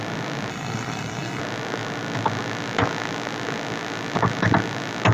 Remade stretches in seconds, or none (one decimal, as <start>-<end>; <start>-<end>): 0.5-1.4